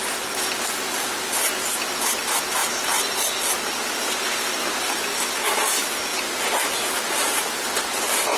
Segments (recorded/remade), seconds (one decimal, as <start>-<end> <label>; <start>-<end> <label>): 0.0-8.4 recorded